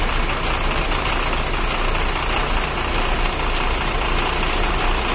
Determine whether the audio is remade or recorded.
recorded